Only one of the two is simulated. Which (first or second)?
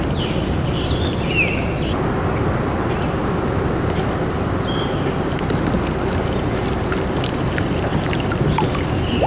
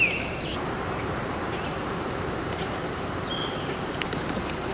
second